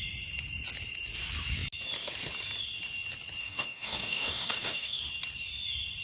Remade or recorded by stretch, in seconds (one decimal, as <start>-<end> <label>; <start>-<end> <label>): 0.0-3.4 recorded; 3.4-5.0 remade; 5.0-6.0 recorded

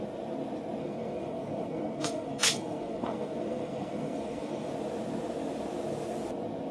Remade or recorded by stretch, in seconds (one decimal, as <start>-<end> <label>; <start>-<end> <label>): 0.0-0.8 recorded; 0.8-4.7 remade; 4.7-6.7 recorded